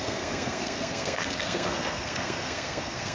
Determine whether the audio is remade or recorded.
remade